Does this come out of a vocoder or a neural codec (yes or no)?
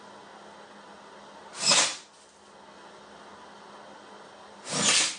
no